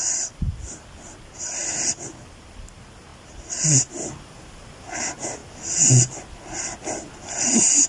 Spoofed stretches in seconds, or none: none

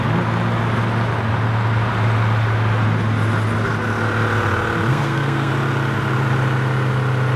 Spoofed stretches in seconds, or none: 4.9-5.5

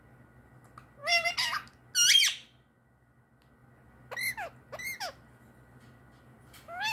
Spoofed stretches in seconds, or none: none

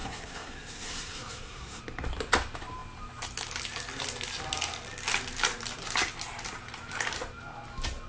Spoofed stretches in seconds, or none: 0.0-1.8